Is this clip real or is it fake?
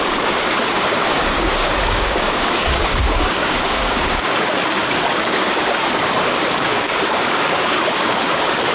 fake